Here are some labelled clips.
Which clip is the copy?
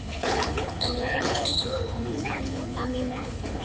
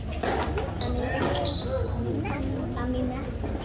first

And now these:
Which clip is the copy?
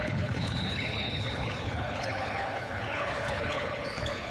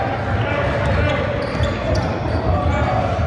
first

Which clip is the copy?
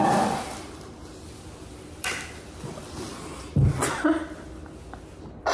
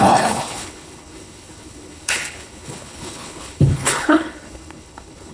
second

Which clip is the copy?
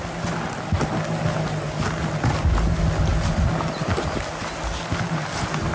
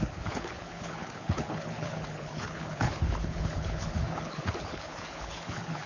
second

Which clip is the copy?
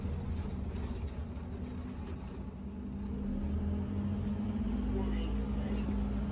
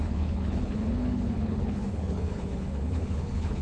second